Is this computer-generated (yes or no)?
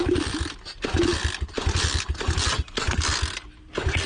no